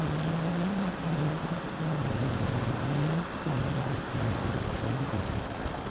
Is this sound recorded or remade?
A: recorded